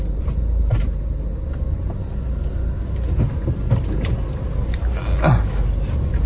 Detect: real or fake real